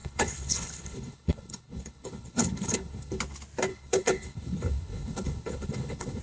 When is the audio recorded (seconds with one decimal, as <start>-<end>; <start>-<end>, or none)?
3.2-3.7